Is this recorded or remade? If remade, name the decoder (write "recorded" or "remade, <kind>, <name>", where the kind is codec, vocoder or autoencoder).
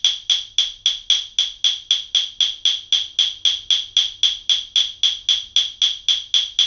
recorded